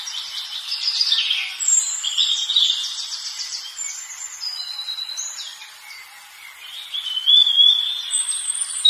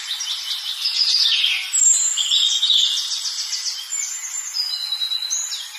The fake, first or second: first